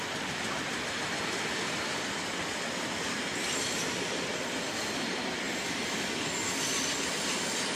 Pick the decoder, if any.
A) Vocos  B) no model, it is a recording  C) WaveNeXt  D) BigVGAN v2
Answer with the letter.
D